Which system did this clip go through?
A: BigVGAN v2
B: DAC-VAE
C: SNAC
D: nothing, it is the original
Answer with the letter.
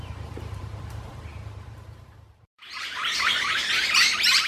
A